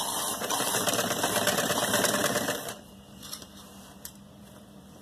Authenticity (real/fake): fake